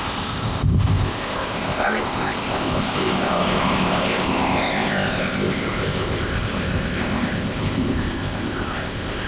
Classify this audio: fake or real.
fake